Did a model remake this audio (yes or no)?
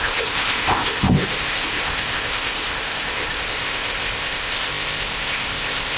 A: yes